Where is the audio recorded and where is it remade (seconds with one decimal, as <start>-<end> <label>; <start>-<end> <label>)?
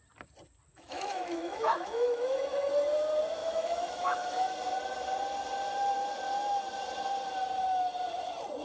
0.0-0.7 recorded; 0.7-2.7 remade; 2.7-3.4 recorded; 3.4-4.5 remade; 4.5-8.6 recorded